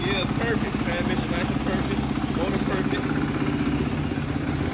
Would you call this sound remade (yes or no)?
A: no